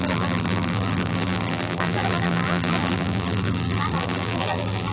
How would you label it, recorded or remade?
remade